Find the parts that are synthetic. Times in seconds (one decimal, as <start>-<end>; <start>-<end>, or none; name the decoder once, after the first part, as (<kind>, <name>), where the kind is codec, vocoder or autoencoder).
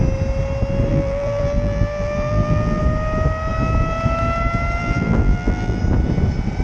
0.9-2.8 (vocoder, BigVGAN v2); 4.8-5.8